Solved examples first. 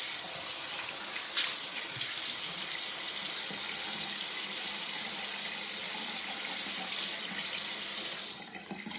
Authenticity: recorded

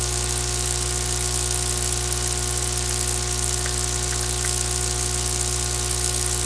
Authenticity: recorded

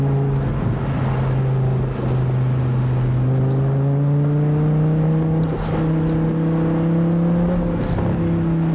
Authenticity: recorded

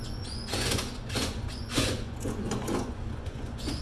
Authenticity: remade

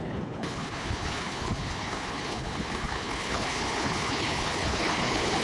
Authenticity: remade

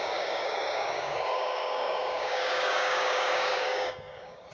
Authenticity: remade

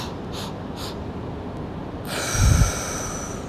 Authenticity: recorded